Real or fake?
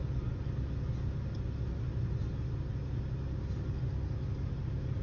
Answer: real